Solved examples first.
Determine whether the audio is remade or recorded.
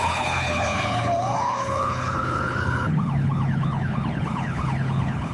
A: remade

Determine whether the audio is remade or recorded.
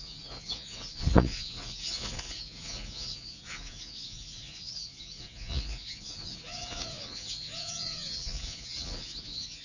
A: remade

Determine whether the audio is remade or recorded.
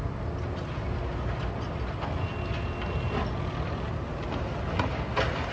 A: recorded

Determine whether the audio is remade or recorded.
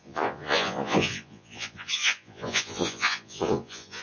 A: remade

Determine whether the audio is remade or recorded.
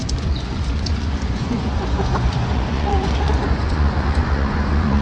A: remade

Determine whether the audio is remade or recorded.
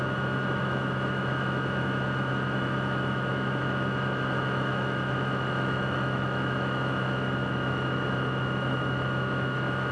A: remade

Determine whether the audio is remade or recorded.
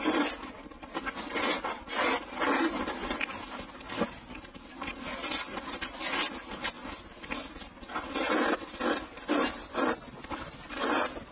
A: recorded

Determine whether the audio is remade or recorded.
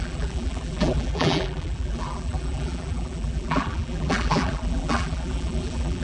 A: remade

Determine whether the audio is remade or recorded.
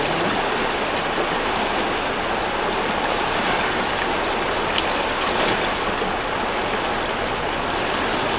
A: recorded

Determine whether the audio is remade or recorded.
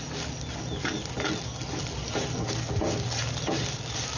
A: recorded